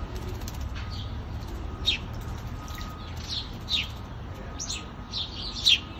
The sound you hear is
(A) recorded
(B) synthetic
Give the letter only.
A